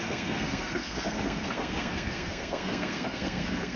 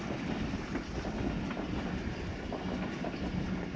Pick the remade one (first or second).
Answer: first